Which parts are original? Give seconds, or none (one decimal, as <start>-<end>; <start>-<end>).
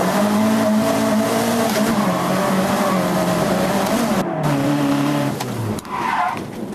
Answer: none